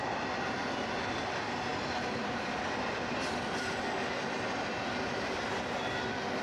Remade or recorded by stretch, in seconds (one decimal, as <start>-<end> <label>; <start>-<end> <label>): 0.0-6.4 recorded

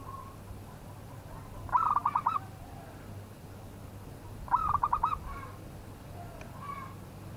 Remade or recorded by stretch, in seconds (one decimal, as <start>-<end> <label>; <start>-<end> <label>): 0.0-2.0 recorded; 2.0-2.7 remade; 2.7-7.4 recorded

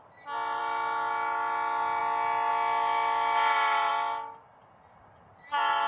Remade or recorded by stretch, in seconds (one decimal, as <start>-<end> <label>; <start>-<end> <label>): 0.0-5.9 recorded